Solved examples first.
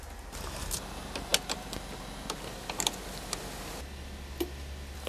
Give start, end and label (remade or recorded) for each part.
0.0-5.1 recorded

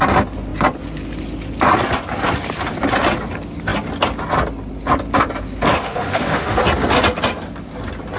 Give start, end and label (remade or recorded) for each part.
0.0-5.8 recorded; 5.8-6.6 remade; 6.6-8.2 recorded

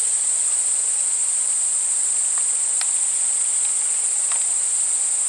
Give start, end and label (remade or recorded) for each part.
0.0-5.3 recorded